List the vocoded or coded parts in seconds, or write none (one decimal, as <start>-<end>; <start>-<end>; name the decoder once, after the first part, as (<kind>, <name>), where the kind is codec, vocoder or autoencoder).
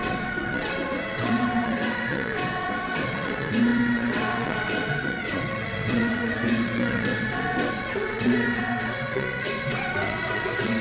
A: 0.0-10.8 (vocoder, WaveNeXt)